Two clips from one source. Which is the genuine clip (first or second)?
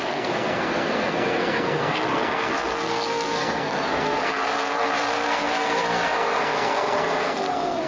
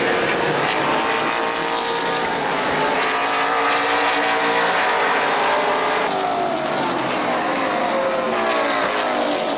second